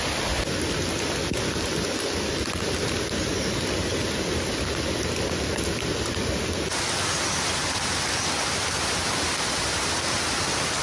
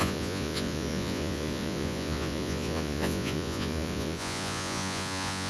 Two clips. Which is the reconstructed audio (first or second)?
second